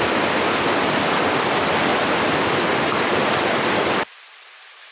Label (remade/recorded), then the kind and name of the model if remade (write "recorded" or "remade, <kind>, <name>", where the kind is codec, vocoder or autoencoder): recorded